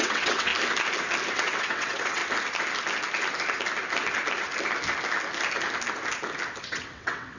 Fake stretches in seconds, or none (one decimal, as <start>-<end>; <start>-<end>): 0.0-0.5; 1.3-2.2; 6.6-7.4